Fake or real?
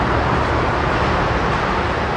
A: real